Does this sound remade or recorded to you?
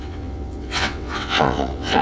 remade